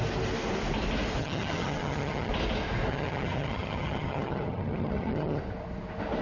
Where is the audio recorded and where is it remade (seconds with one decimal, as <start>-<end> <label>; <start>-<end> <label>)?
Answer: 0.0-1.2 recorded; 1.2-2.3 remade; 2.3-2.9 recorded; 2.9-5.4 remade; 5.4-6.2 recorded